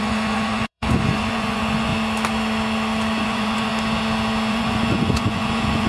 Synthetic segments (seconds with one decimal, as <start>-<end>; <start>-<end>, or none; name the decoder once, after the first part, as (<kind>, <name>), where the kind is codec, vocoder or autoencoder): 0.0-1.9 (vocoder, Vocos); 3.2-3.7; 4.5-5.9